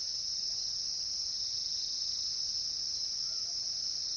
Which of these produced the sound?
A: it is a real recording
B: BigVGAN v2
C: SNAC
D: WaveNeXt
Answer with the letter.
A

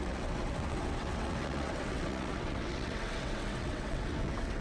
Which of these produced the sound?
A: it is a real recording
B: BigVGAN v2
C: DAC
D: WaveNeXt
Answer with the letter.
D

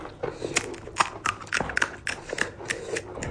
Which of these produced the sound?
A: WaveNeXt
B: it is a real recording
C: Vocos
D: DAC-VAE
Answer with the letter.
B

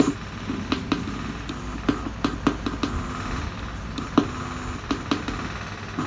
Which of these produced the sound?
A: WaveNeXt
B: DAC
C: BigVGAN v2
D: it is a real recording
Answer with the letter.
D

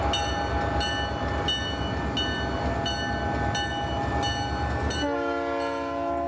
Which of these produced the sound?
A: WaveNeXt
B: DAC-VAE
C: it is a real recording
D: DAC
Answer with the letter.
C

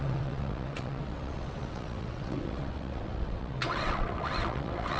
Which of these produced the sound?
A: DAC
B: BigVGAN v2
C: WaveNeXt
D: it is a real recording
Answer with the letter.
C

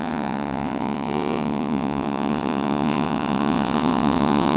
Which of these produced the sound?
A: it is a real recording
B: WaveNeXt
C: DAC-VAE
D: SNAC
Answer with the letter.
B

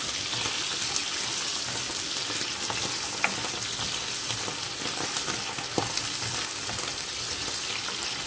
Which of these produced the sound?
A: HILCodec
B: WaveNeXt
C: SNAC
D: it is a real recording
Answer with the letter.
D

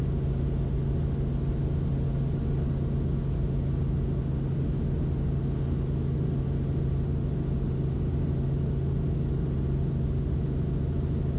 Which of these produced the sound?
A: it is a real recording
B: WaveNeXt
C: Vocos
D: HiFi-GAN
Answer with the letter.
A